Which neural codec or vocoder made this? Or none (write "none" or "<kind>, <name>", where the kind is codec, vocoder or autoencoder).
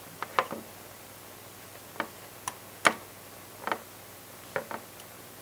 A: none